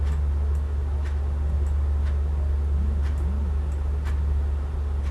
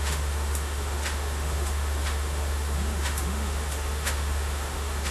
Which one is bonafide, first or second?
first